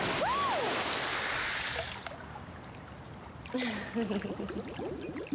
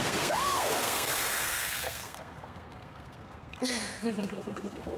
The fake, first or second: second